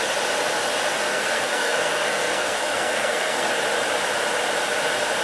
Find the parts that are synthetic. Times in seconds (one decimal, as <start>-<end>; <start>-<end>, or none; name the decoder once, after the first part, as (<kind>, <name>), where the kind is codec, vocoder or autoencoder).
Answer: 1.1-3.5 (codec, SNAC)